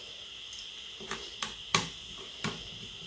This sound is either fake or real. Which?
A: real